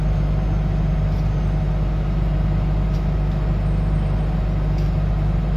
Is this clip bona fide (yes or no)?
yes